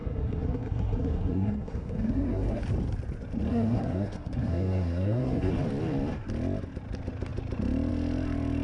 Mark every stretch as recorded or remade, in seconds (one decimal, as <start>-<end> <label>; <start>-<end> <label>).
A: 0.0-2.6 remade; 2.6-3.5 recorded; 3.5-5.5 remade; 5.5-8.6 recorded